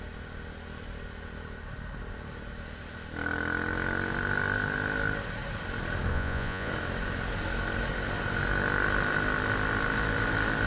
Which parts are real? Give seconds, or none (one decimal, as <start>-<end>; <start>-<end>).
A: 0.0-6.1; 6.7-10.7